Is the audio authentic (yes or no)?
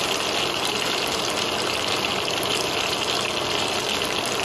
yes